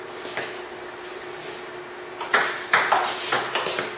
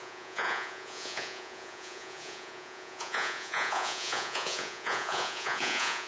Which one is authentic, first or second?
first